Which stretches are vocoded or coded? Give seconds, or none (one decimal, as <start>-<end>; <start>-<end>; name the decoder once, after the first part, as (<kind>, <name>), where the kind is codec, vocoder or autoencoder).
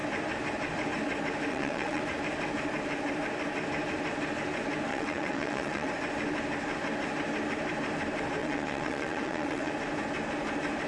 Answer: 1.5-2.0 (vocoder, WaveNeXt); 4.9-5.9; 8.4-9.7